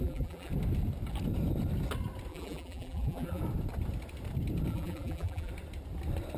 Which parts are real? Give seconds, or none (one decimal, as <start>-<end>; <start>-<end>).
0.5-2.3; 3.4-4.7; 5.5-6.4